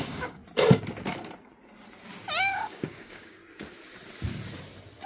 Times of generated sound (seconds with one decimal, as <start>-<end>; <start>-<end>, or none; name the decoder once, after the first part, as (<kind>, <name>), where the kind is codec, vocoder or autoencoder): 0.0-0.4 (codec, DAC); 2.4-3.4